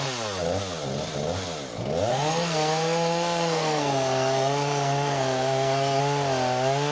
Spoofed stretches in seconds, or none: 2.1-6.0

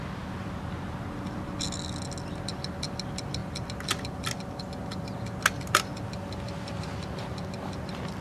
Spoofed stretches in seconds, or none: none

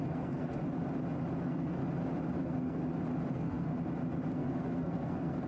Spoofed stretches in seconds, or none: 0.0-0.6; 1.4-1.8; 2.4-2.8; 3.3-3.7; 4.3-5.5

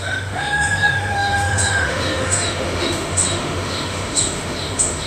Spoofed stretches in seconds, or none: 0.0-5.1